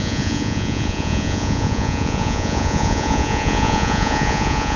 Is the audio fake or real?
fake